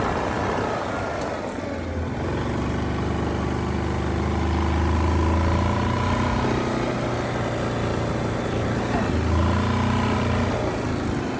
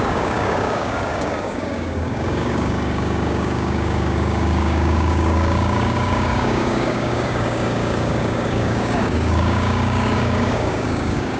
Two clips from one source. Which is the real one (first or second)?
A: first